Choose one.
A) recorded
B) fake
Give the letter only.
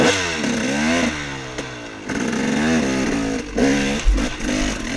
A